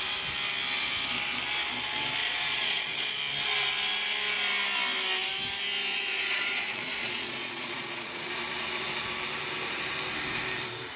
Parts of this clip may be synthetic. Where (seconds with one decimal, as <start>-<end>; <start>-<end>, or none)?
2.2-3.2; 5.9-8.3